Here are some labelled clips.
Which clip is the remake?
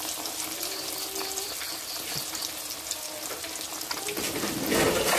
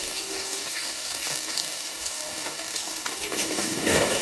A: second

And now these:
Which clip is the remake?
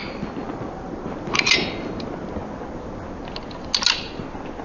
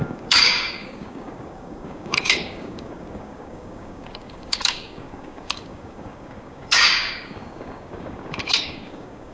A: second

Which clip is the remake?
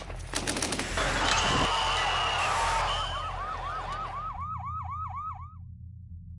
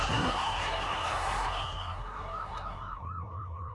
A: second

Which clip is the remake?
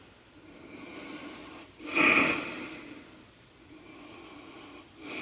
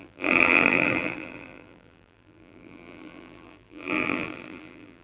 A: second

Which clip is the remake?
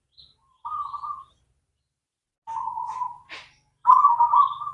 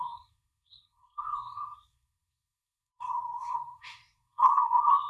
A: second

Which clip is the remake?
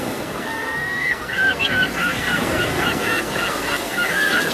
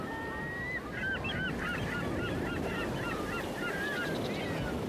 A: first